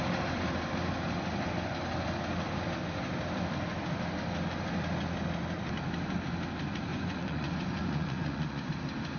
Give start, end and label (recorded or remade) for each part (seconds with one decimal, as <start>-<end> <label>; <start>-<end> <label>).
0.0-6.9 recorded; 6.9-8.7 remade; 8.7-9.2 recorded